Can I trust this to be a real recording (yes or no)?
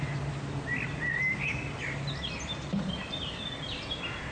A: yes